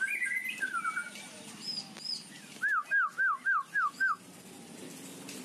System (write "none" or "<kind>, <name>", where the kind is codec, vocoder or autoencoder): none